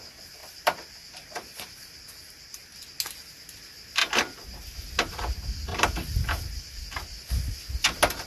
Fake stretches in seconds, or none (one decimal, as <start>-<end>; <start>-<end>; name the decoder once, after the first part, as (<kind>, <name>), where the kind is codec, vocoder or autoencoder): 0.4-2.0 (vocoder, BigVGAN v2); 4.0-4.9; 5.7-6.8